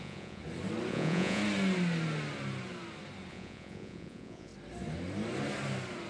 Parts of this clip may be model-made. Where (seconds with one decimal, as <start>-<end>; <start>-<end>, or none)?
0.0-0.4; 0.9-1.4; 3.3-4.5